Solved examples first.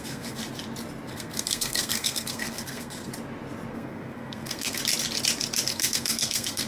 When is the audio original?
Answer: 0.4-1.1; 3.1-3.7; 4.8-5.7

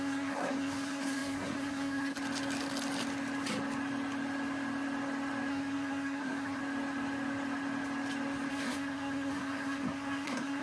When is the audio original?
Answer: 2.1-5.5; 6.6-8.5

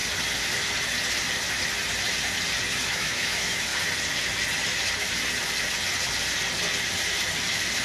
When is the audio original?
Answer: 0.0-2.8; 3.7-7.8

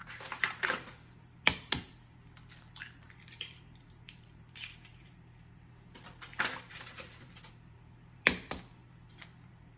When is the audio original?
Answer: none

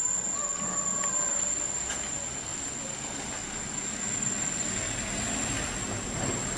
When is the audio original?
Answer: 0.0-6.6

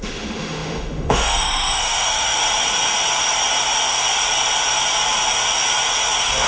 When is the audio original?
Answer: 2.4-6.5

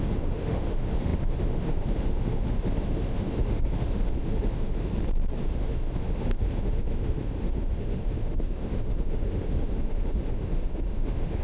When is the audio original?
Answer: 4.9-5.4

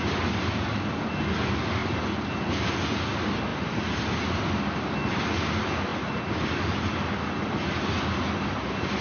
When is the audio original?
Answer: 0.0-9.0